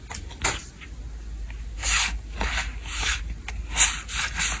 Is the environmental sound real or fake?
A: real